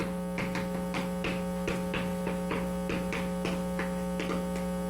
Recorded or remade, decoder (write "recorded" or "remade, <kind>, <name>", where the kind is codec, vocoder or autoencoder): recorded